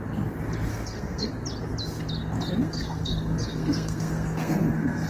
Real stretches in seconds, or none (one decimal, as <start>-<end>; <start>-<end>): 0.0-0.7; 1.3-2.6